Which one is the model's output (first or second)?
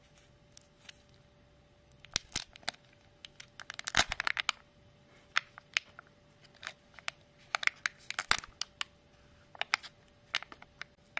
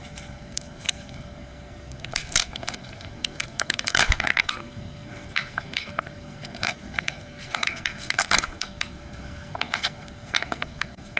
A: second